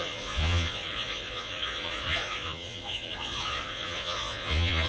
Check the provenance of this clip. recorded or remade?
remade